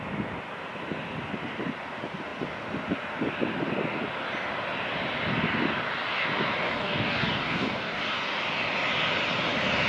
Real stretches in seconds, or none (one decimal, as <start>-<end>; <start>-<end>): 0.0-6.6; 8.0-9.9